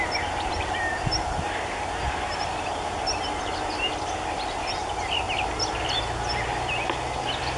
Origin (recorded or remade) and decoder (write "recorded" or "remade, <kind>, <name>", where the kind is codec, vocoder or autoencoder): recorded